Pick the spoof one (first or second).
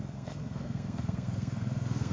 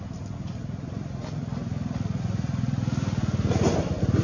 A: first